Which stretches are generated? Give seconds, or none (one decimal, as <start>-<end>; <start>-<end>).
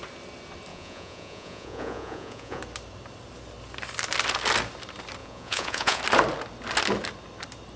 0.7-2.6; 5.2-6.0